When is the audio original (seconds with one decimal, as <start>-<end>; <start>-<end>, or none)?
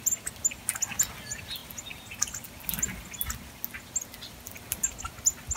0.0-5.6